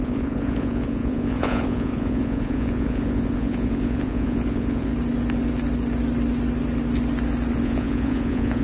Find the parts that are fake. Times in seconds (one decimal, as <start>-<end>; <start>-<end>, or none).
0.0-4.9; 7.5-8.6